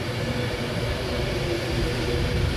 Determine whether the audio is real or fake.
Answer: real